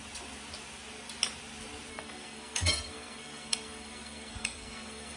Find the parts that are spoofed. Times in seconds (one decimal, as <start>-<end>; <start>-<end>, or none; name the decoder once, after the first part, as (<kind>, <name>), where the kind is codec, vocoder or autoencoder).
1.9-5.2 (codec, SNAC)

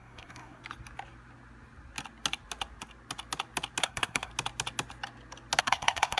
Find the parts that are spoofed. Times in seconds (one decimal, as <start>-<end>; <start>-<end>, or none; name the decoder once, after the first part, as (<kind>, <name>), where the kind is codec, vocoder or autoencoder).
0.0-0.6 (codec, SNAC); 3.8-4.3; 5.6-6.2

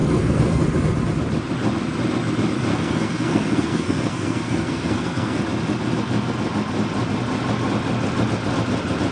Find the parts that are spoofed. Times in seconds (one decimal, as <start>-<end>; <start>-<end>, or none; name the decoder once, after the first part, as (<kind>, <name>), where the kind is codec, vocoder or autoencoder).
0.0-0.6 (codec, SNAC); 2.7-5.4

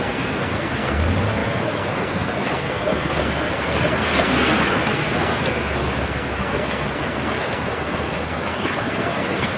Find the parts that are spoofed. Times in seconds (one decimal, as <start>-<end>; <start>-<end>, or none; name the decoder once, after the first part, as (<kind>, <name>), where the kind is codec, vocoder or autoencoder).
0.0-9.6 (codec, SNAC)

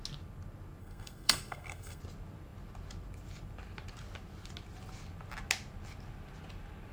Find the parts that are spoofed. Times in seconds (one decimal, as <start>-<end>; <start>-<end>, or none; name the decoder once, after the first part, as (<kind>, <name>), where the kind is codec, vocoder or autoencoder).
0.8-2.0 (codec, SNAC)

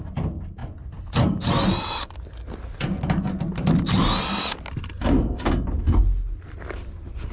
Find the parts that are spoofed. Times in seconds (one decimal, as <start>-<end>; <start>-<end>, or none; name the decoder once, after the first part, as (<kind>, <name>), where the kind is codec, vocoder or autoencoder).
none